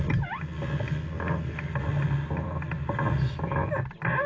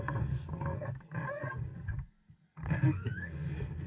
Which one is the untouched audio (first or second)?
first